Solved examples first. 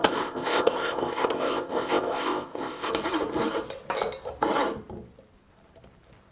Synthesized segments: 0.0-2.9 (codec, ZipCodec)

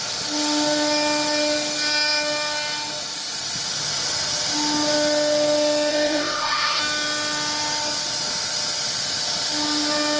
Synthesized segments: 5.9-6.8 (codec, ZipCodec)